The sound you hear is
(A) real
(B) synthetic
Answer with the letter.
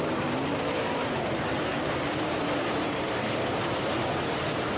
B